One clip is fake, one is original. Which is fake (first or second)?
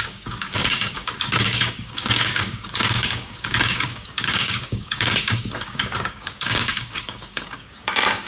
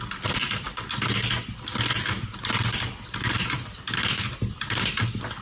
first